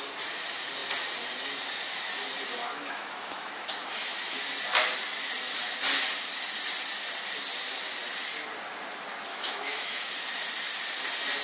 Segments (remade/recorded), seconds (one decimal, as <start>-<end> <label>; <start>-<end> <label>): 0.0-2.6 recorded; 2.6-4.4 remade; 4.4-9.3 recorded; 9.3-10.1 remade; 10.1-11.4 recorded